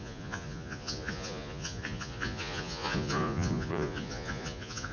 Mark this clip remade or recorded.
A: remade